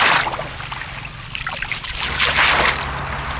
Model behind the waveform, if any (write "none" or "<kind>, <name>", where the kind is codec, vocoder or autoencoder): none